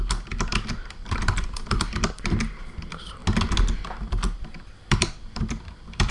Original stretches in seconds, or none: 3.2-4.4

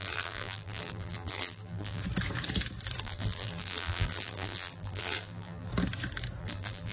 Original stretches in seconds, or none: 2.0-3.0; 5.7-6.4

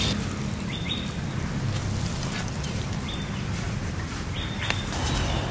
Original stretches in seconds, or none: 0.0-1.8; 5.1-5.5